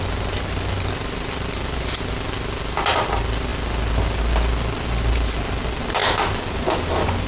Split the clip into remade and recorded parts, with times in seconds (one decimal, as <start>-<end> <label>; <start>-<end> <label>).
0.0-7.3 recorded